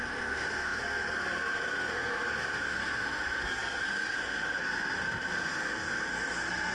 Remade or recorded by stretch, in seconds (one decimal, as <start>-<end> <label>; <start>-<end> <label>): 0.0-6.7 remade